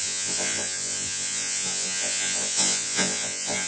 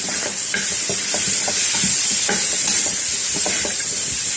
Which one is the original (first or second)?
second